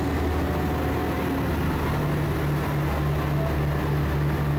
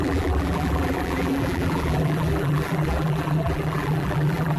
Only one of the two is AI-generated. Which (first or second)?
second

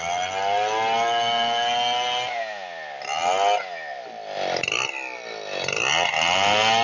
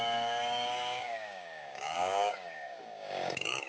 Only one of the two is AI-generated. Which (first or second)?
second